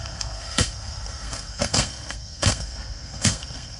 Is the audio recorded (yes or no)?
no